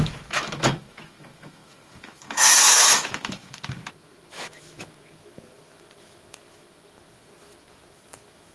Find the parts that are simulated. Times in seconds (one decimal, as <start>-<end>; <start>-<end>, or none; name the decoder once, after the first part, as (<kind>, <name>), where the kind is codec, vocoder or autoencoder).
0.0-8.5 (autoencoder, DAC-VAE)